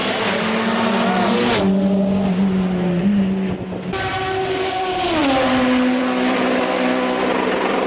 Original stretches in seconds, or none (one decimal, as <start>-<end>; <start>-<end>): 0.0-7.9